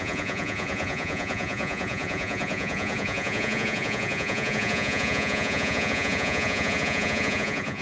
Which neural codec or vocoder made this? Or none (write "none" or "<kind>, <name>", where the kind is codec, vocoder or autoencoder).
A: vocoder, Vocos